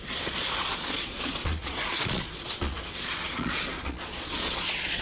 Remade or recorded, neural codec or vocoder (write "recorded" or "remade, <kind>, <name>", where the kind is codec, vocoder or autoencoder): remade, vocoder, Vocos